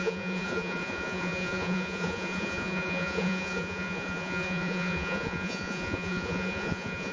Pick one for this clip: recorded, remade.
remade